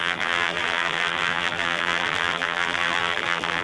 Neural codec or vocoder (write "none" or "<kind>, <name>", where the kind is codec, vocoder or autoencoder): vocoder, BigVGAN v2